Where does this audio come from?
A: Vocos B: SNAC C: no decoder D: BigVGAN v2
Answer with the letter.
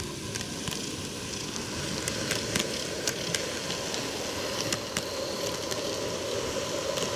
C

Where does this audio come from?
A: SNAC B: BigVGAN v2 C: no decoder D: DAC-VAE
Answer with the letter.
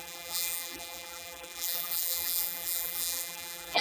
B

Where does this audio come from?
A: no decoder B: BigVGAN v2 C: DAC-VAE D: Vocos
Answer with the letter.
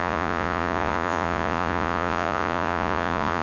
D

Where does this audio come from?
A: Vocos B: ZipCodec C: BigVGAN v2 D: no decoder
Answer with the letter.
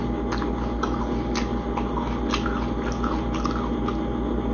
D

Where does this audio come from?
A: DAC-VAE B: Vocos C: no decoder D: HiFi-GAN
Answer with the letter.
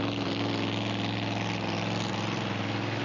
C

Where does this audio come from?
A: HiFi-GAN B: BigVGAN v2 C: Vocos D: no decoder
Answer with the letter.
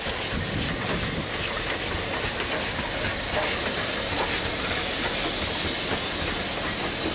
D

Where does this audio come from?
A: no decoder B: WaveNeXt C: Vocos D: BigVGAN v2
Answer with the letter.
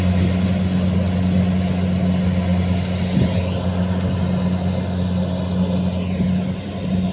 A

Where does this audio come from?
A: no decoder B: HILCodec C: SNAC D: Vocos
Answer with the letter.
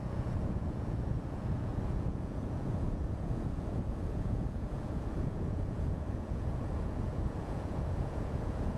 D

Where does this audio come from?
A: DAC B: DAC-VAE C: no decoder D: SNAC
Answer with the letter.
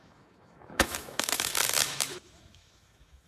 B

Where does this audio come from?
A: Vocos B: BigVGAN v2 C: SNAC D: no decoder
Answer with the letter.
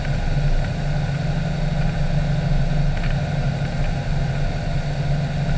D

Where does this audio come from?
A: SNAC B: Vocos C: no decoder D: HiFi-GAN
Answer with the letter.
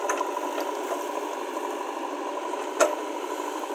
C